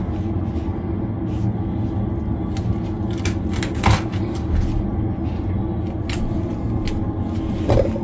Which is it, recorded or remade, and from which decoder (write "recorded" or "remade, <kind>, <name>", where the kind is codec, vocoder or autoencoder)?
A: recorded